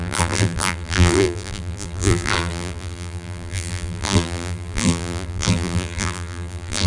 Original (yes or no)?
no